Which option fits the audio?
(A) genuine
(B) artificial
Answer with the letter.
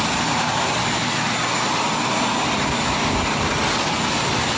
A